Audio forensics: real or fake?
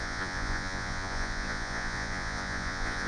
fake